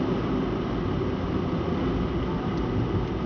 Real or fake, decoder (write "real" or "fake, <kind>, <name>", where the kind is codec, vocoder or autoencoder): real